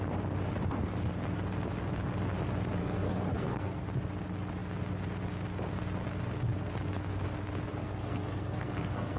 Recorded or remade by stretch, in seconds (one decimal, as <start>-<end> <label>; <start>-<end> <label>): 0.0-2.8 recorded; 2.8-3.8 remade; 3.8-7.7 recorded; 7.7-9.2 remade